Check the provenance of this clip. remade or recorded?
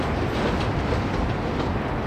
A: recorded